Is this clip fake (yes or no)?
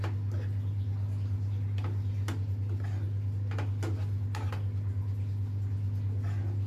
no